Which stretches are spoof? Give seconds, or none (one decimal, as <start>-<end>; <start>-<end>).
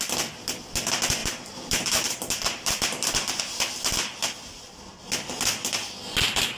1.2-3.4